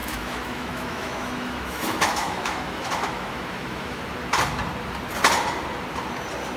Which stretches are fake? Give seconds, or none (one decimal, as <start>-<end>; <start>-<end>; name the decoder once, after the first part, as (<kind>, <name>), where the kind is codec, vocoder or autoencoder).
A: 0.0-4.0 (autoencoder, DAC-VAE)